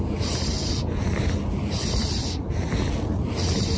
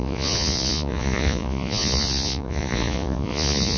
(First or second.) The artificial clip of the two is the second